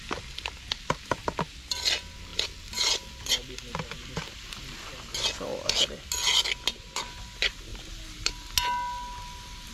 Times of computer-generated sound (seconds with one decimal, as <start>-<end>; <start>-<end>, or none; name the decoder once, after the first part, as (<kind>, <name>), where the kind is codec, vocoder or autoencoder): 7.7-8.3 (vocoder, BigVGAN v2)